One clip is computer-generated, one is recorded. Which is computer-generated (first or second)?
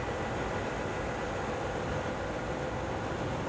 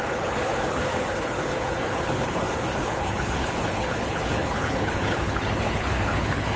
second